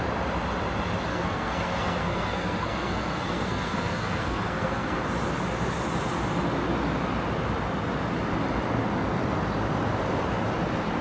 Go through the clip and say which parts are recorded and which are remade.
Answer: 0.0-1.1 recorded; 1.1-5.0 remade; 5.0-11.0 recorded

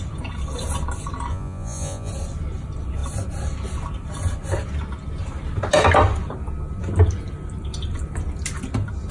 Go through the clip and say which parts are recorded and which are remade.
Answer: 0.0-1.3 recorded; 1.3-2.1 remade; 2.1-9.1 recorded

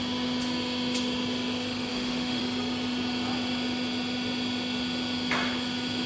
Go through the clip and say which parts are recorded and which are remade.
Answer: 0.0-1.9 recorded; 1.9-2.4 remade; 2.4-6.1 recorded

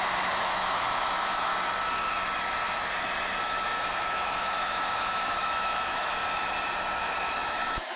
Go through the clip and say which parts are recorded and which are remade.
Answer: 0.0-1.5 remade; 1.5-3.4 recorded; 3.4-6.2 remade; 6.2-7.3 recorded; 7.3-8.0 remade